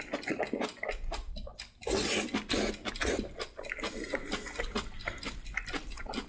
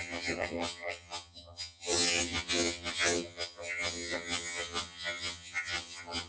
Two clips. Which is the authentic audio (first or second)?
first